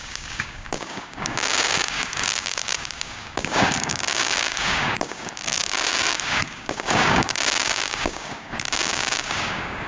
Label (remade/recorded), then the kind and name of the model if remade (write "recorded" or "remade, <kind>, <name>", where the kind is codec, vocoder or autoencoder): remade, codec, DAC